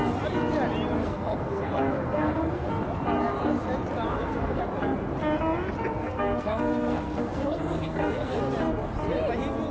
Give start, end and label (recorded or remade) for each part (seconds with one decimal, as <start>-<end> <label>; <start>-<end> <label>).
0.0-1.0 recorded; 1.0-2.7 remade; 2.7-4.1 recorded; 4.1-4.6 remade; 4.6-6.0 recorded; 6.0-8.4 remade; 8.4-9.7 recorded